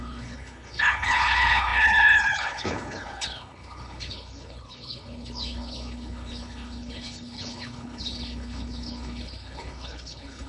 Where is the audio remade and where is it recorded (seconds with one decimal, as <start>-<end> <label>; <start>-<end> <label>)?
0.0-10.5 remade